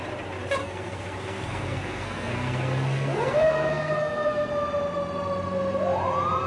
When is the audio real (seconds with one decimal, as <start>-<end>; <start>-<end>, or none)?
0.0-0.6; 4.5-6.5